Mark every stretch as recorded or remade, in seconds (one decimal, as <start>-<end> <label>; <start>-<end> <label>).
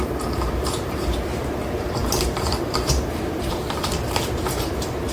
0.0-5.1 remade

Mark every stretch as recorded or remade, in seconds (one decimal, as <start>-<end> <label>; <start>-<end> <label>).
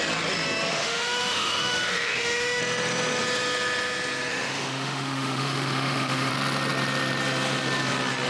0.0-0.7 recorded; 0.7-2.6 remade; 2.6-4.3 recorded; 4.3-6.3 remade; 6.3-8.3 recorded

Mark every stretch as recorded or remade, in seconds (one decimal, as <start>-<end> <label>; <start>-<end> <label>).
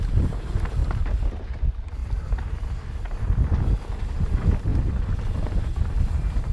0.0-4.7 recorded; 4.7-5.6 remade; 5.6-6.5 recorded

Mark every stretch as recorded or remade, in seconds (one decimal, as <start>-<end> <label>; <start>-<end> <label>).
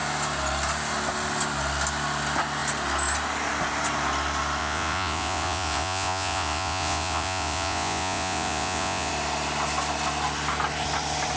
0.0-4.6 recorded; 4.6-9.1 remade; 9.1-11.4 recorded